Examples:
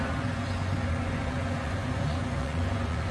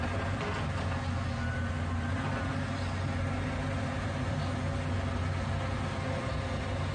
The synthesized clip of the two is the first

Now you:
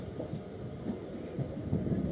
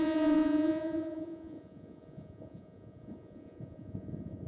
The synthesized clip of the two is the second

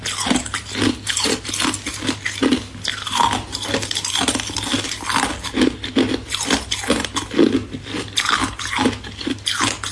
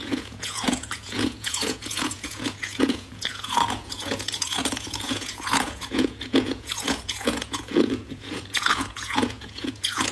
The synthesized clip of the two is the second